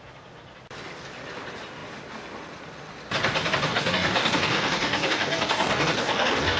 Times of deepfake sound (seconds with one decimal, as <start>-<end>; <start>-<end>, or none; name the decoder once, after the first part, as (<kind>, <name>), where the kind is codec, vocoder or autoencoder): 3.7-6.6 (codec, DAC)